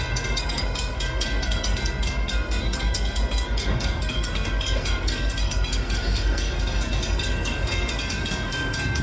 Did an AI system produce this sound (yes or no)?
yes